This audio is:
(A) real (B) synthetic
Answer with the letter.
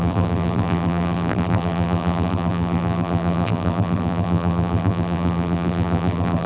B